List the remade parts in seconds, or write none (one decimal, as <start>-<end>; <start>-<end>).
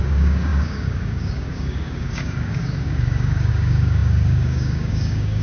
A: 0.0-5.4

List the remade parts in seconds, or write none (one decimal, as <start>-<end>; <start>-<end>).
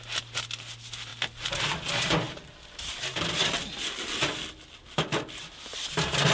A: none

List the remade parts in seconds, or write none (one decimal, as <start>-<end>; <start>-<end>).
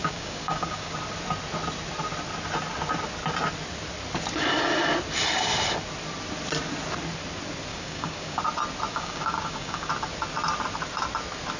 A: 0.0-0.9; 7.7-8.4; 8.9-9.9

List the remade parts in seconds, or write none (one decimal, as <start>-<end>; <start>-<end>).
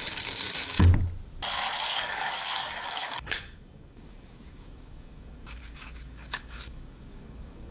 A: 0.0-0.9; 1.9-7.7